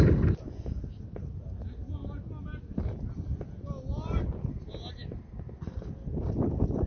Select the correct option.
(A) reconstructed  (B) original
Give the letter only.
B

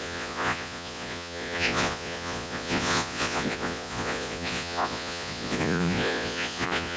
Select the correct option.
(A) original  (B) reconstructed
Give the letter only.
B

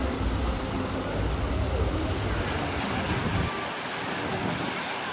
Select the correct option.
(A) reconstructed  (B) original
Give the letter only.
B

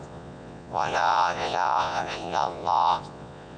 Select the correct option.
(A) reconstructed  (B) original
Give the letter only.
A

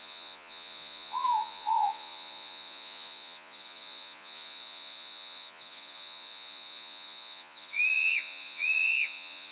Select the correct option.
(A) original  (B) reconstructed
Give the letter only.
B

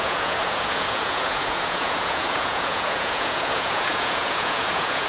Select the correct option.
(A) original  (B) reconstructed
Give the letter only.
B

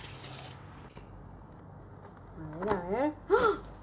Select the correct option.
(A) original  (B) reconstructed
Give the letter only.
A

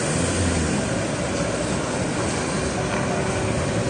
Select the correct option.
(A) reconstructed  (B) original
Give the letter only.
B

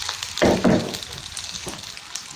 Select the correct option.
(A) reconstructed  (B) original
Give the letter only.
B